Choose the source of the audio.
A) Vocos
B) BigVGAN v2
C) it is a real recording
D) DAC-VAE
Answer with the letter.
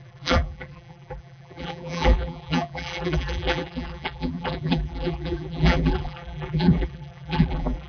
B